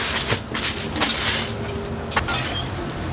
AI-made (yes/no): no